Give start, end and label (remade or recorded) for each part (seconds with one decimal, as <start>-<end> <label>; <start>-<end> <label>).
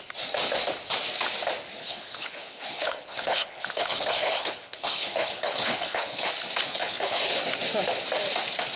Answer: 0.0-1.8 recorded; 1.8-6.3 remade; 6.3-6.7 recorded; 6.7-7.4 remade; 7.4-8.8 recorded